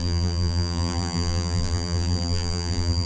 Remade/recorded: remade